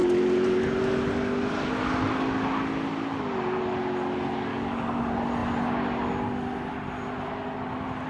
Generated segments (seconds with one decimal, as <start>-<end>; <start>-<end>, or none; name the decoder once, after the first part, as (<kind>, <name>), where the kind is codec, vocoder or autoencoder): 4.5-5.0 (codec, DAC)